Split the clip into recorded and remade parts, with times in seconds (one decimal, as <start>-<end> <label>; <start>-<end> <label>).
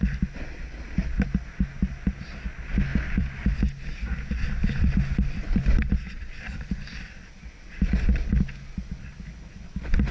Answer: 0.0-2.9 recorded; 2.9-3.6 remade; 3.6-4.4 recorded; 4.4-8.1 remade; 8.1-10.1 recorded